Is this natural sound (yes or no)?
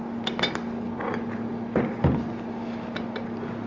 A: yes